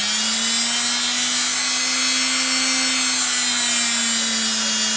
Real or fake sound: real